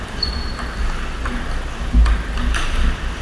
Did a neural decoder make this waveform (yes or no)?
no